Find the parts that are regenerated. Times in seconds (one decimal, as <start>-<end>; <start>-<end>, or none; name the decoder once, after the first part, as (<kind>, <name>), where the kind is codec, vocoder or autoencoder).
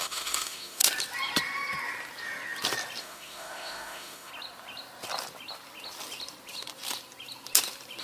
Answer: 0.0-0.8 (autoencoder, DAC-VAE); 3.0-4.3